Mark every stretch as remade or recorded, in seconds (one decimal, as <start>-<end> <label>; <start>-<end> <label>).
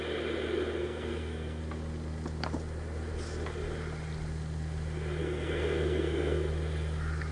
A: 0.0-0.8 recorded; 0.8-1.6 remade; 1.6-5.2 recorded; 5.2-6.5 remade; 6.5-7.3 recorded